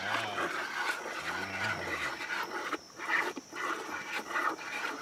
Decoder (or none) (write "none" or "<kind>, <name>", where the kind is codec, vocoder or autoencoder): none